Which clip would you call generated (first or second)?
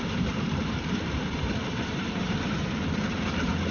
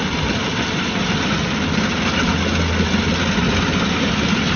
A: first